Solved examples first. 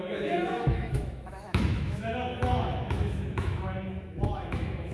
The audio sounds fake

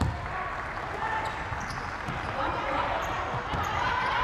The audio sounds real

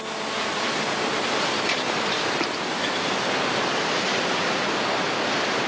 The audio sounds real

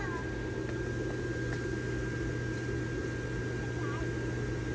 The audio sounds real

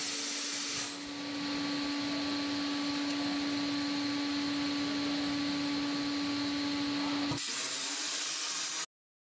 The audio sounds real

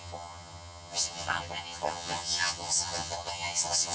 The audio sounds fake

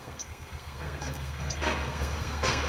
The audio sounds fake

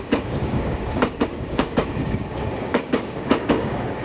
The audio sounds fake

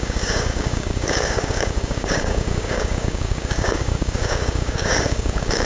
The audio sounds fake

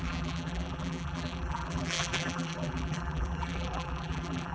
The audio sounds fake